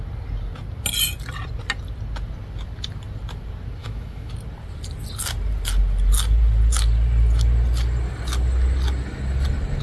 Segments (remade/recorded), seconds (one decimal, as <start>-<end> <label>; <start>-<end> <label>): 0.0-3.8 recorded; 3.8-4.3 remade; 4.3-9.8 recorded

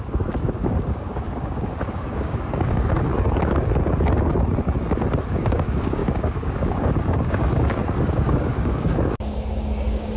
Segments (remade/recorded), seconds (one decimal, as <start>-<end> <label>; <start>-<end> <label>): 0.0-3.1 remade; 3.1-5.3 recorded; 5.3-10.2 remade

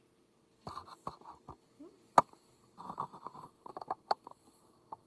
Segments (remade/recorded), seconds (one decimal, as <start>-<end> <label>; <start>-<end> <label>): 0.0-5.1 recorded

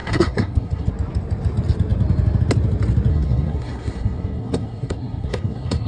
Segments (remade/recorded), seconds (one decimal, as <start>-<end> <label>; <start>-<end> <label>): 0.0-0.9 remade; 0.9-3.1 recorded; 3.1-5.9 remade

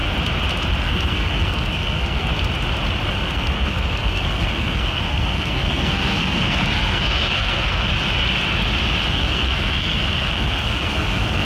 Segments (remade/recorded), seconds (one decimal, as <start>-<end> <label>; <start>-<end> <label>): 0.0-0.8 recorded; 0.8-2.3 remade; 2.3-3.1 recorded; 3.1-7.9 remade; 7.9-9.1 recorded; 9.1-11.4 remade

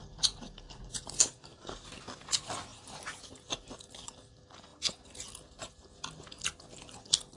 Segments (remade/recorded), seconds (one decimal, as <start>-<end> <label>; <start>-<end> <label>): 0.0-0.8 remade; 0.8-1.5 recorded; 1.5-2.0 remade; 2.0-7.4 recorded